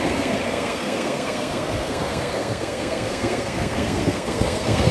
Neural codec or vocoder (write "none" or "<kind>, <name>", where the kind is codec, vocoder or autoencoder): codec, SNAC